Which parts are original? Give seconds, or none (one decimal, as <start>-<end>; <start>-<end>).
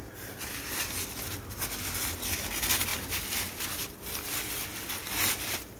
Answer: 0.0-5.8